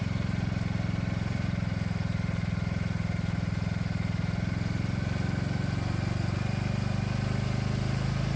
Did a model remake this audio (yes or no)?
no